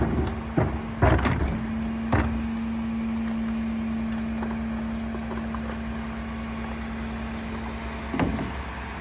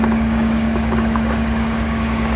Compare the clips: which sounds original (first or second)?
first